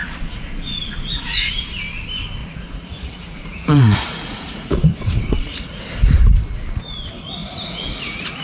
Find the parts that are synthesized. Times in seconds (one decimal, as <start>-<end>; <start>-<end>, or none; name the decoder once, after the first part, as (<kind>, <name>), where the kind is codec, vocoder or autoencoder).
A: 0.0-1.6 (vocoder, Vocos); 2.4-5.8; 7.4-8.4